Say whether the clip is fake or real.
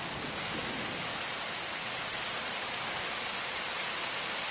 real